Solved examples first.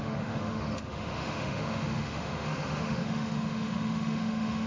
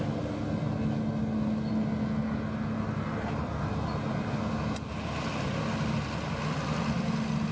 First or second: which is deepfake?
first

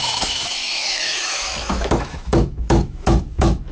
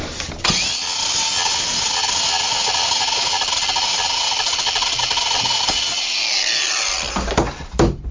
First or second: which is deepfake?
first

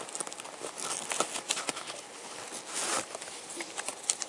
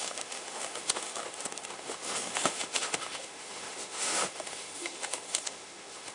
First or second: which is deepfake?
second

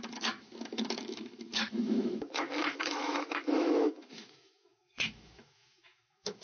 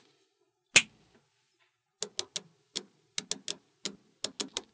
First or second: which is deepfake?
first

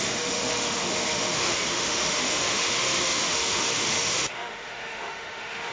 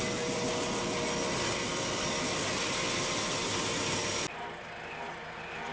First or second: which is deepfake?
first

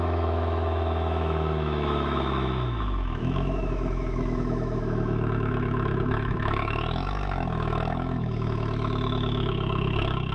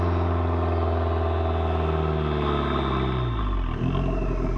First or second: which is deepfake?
first